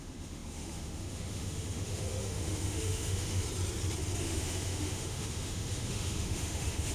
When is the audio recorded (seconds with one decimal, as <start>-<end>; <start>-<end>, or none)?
3.4-4.2